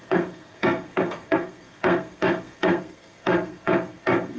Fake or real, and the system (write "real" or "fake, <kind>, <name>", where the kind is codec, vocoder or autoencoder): fake, codec, SNAC